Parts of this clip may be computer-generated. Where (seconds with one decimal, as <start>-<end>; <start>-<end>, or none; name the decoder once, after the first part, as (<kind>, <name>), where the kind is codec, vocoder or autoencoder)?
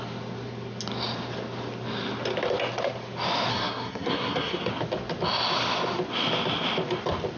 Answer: 3.5-4.7 (codec, SNAC)